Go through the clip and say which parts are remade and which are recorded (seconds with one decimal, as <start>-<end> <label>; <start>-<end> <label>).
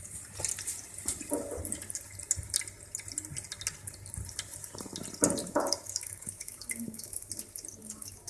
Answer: 0.0-5.4 recorded; 5.4-7.3 remade; 7.3-7.8 recorded; 7.8-8.3 remade